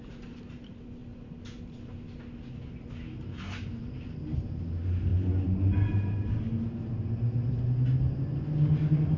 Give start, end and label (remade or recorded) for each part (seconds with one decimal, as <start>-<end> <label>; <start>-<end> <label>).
0.0-9.2 recorded